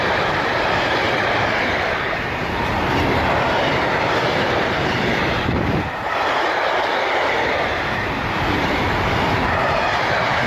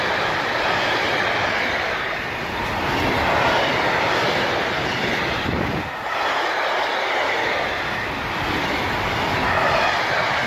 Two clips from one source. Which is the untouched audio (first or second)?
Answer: second